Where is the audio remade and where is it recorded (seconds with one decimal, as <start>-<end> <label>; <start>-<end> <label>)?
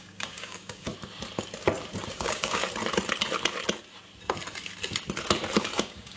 0.0-0.9 remade; 0.9-2.1 recorded; 2.1-2.6 remade; 2.6-5.6 recorded; 5.6-6.2 remade